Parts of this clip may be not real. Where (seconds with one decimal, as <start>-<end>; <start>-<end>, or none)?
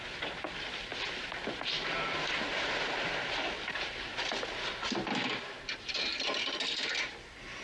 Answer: 0.0-0.9; 1.7-7.6